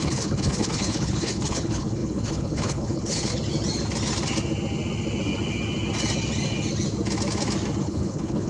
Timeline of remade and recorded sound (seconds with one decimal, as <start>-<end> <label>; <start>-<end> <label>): 0.0-3.3 remade; 3.3-7.8 recorded; 7.8-8.5 remade